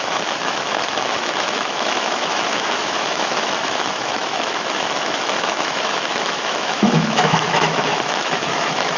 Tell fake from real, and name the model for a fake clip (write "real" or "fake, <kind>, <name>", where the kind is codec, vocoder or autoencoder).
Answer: fake, autoencoder, DAC-VAE